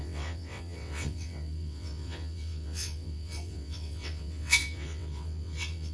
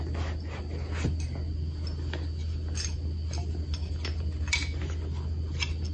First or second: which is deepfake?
first